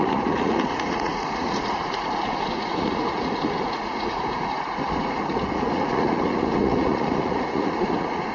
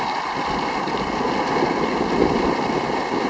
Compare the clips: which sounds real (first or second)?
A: second